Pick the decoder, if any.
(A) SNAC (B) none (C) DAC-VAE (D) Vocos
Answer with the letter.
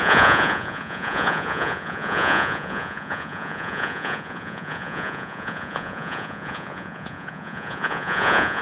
D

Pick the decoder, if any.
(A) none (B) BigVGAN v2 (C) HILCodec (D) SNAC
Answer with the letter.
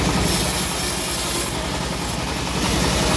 A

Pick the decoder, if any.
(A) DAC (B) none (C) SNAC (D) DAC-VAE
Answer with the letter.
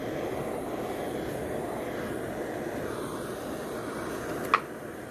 B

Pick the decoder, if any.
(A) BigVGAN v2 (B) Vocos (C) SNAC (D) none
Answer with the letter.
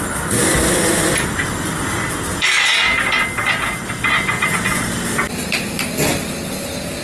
D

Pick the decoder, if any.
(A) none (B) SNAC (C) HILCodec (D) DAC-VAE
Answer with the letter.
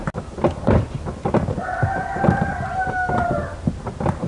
A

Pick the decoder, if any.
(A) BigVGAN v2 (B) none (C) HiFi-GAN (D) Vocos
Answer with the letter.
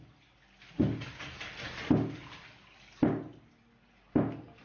B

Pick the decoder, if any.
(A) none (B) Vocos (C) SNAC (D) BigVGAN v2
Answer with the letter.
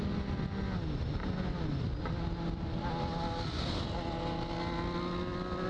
A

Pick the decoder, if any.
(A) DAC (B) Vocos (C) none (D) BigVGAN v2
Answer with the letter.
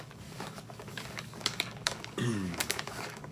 A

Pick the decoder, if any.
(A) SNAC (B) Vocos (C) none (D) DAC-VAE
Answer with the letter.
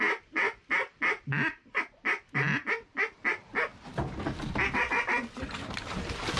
C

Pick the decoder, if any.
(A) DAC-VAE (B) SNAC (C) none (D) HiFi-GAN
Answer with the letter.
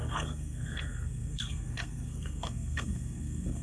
B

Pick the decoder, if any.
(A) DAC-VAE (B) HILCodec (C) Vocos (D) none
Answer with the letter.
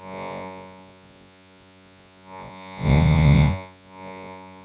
C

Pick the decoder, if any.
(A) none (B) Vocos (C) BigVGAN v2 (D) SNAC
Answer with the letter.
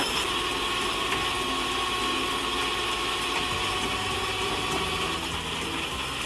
A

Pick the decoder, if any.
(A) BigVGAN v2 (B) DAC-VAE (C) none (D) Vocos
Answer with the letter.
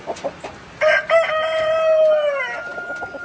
C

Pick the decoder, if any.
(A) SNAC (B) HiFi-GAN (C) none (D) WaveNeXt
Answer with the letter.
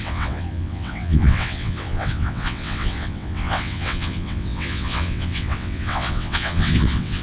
D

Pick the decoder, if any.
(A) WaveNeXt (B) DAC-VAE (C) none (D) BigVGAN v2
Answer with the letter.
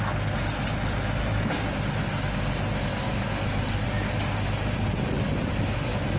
C